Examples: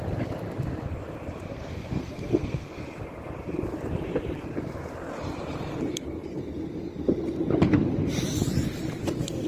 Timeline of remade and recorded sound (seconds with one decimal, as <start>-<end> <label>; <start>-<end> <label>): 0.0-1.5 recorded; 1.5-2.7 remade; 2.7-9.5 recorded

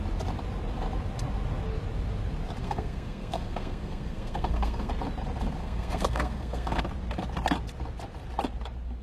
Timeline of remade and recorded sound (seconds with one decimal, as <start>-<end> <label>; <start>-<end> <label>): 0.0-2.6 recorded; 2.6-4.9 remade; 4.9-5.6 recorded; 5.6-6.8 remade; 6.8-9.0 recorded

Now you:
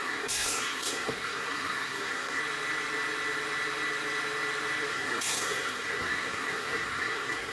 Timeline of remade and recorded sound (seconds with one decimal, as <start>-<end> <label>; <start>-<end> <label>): 0.0-2.4 remade; 2.4-4.9 recorded; 4.9-7.5 remade

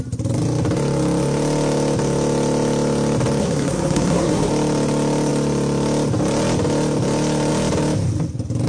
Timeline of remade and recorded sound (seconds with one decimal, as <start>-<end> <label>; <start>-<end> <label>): 0.0-3.4 recorded; 3.4-4.5 remade; 4.5-8.7 recorded

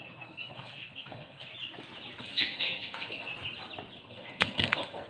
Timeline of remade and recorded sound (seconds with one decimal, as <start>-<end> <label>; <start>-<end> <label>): 0.0-1.5 remade; 1.5-2.2 recorded; 2.2-3.3 remade; 3.3-4.0 recorded; 4.0-5.1 remade